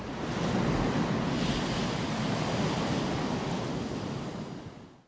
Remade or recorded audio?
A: recorded